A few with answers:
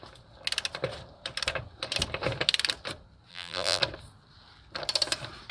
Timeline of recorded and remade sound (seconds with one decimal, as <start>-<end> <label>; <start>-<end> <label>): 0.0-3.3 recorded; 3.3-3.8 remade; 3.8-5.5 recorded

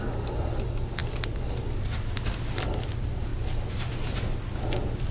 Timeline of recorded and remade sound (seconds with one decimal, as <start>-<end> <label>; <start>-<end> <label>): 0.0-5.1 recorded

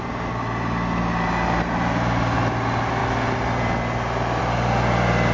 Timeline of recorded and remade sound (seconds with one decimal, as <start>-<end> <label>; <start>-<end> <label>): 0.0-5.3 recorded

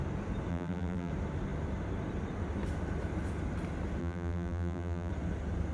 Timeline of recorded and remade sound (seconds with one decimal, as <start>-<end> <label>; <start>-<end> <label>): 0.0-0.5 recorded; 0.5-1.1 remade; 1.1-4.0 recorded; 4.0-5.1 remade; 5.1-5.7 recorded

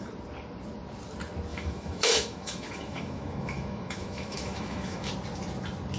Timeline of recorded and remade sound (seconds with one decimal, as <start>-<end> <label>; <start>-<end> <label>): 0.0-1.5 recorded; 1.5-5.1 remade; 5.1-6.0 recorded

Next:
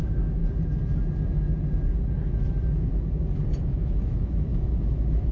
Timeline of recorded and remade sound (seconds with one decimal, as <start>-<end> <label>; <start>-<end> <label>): 0.0-0.4 remade; 0.4-3.6 recorded; 3.6-5.3 remade

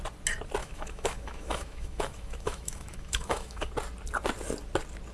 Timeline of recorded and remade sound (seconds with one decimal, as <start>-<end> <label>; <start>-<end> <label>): 0.0-0.6 recorded; 0.6-3.7 remade; 3.7-5.1 recorded

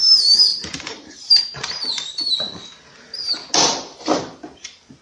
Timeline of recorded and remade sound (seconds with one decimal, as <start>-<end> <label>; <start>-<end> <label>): 0.0-0.5 recorded; 0.5-2.3 remade; 2.3-5.0 recorded